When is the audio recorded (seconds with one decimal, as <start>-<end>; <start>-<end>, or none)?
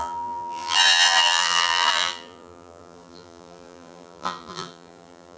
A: none